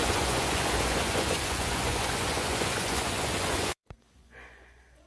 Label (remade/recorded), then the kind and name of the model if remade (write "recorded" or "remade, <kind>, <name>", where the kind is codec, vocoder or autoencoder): remade, vocoder, Vocos